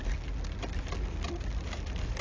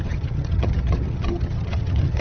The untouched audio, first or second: first